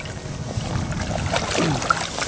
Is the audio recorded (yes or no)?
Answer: yes